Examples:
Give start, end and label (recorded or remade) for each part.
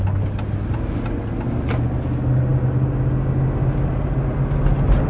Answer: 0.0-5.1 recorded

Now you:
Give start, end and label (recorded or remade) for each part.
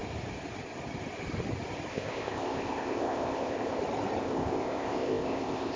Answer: 0.0-1.9 recorded; 1.9-3.8 remade; 3.8-4.2 recorded; 4.2-5.8 remade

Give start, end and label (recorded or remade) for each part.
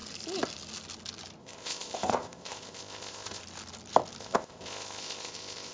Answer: 0.0-1.4 recorded; 1.4-3.4 remade; 3.4-4.2 recorded; 4.2-5.7 remade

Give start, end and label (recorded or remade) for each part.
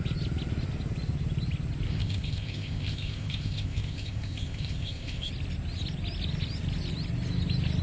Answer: 0.0-1.9 recorded; 1.9-5.3 remade; 5.3-7.8 recorded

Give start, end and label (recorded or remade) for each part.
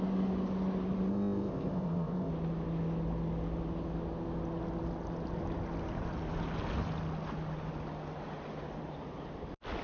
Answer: 0.0-1.1 recorded; 1.1-2.3 remade; 2.3-9.8 recorded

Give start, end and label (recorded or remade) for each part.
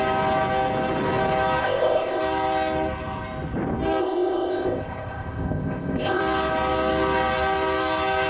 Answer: 0.0-1.6 recorded; 1.6-2.2 remade; 2.2-4.0 recorded; 4.0-6.2 remade; 6.2-8.3 recorded